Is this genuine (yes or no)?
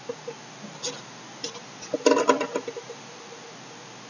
yes